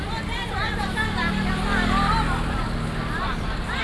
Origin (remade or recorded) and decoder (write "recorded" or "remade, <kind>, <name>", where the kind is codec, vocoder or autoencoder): recorded